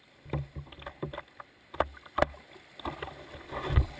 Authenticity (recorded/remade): recorded